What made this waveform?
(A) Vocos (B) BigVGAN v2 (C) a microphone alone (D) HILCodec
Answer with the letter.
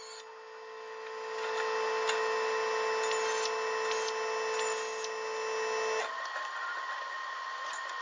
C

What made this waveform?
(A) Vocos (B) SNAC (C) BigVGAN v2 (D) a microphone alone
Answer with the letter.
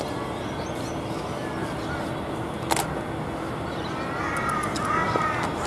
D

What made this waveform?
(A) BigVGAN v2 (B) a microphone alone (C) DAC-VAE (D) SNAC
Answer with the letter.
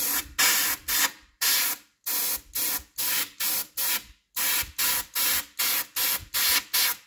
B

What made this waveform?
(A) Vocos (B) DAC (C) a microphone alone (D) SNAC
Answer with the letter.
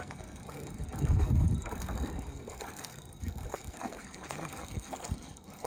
D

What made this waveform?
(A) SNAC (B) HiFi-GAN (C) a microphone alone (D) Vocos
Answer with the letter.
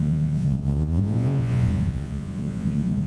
D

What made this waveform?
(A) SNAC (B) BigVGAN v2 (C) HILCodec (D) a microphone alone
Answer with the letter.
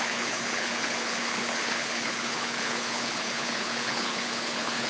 C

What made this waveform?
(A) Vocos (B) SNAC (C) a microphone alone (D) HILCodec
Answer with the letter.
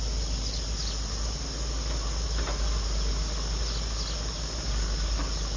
C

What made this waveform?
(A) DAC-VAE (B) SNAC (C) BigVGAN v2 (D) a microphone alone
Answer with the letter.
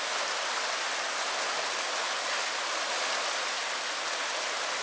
D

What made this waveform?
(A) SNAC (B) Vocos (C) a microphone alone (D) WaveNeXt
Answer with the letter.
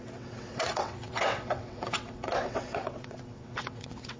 D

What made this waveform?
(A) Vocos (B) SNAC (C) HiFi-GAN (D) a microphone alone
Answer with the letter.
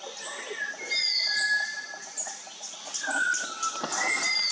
D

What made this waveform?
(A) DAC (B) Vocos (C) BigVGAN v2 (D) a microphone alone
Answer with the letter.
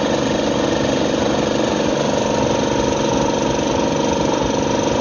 D